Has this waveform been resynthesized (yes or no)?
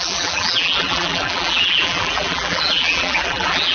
yes